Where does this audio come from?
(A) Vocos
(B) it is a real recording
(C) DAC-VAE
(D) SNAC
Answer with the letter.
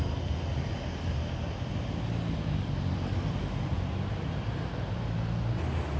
B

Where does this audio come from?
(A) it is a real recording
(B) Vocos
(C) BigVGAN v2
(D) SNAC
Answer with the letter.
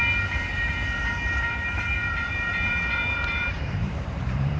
C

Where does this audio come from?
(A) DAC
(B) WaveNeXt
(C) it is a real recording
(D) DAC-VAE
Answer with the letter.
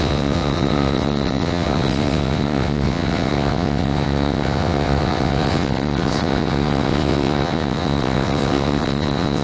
B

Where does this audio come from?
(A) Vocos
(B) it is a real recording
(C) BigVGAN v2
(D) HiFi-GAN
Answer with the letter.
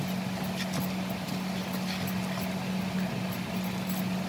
B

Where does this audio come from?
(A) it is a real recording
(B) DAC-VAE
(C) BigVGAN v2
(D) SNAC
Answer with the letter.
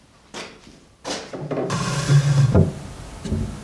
A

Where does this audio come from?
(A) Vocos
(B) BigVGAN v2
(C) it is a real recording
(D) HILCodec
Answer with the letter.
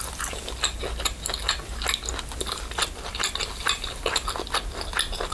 C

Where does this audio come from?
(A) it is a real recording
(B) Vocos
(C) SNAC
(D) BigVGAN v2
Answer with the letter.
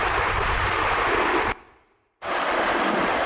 A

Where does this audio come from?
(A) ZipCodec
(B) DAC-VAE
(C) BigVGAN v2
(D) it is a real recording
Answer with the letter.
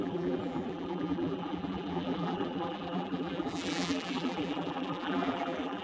C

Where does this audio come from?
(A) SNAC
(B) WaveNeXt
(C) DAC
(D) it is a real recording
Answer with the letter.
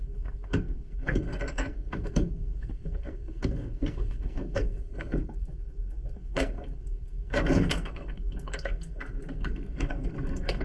A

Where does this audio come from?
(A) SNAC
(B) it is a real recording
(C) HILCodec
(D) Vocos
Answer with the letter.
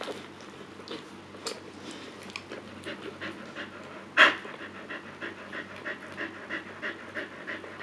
B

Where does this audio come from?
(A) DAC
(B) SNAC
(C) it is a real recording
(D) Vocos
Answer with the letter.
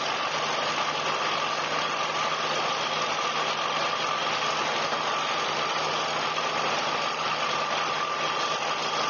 C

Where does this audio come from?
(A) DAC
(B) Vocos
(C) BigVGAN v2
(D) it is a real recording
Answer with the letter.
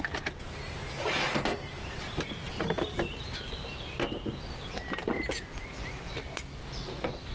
D